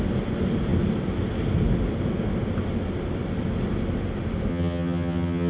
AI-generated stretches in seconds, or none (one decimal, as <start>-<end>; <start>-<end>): 4.5-5.5